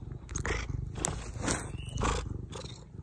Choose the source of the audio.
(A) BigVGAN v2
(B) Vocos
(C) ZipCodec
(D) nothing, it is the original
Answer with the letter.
D